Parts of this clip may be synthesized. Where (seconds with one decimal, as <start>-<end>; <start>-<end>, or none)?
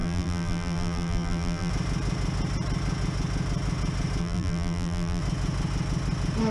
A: 0.0-1.7; 4.2-5.2